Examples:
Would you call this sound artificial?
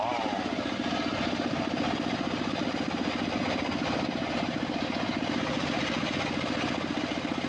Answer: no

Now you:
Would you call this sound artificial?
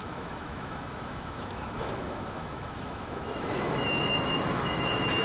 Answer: yes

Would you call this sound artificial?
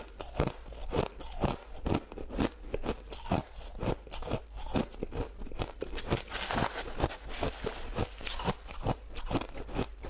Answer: no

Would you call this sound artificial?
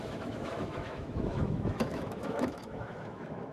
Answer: yes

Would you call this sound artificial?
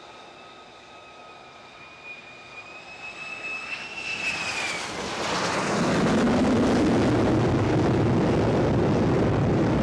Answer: no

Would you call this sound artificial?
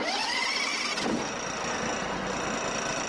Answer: no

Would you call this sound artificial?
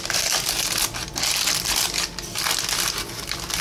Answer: no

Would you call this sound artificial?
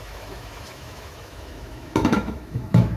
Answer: yes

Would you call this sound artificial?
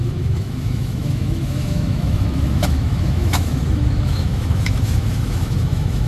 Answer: yes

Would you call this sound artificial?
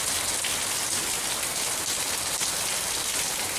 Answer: no